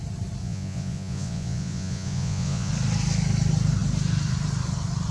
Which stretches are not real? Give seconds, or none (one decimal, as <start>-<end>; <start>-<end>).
0.4-2.7